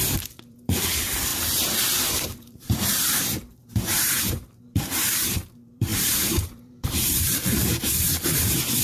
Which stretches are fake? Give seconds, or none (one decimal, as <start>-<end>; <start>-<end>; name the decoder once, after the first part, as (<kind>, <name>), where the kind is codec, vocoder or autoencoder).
0.0-1.3 (vocoder, BigVGAN v2); 1.9-8.8